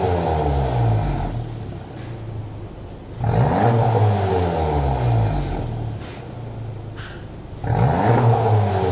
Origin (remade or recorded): recorded